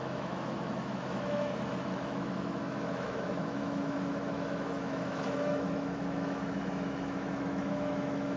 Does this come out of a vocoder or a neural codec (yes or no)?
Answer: yes